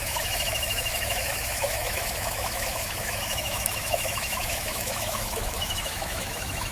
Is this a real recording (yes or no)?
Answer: no